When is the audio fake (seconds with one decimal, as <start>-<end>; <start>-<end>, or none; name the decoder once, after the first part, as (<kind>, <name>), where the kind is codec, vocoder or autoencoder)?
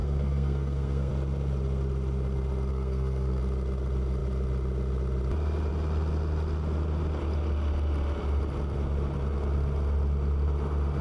0.0-1.1 (codec, SNAC); 2.7-3.4